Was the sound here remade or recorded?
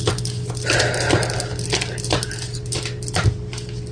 recorded